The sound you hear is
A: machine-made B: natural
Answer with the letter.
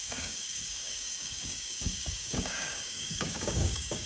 A